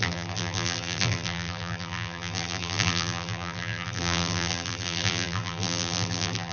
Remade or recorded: remade